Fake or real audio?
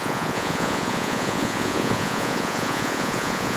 fake